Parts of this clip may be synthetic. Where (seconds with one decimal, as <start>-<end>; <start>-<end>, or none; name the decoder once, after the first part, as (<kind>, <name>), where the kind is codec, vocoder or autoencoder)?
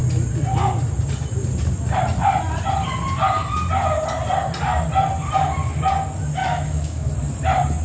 6.4-7.1 (autoencoder, DAC-VAE)